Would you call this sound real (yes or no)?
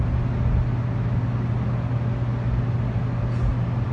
yes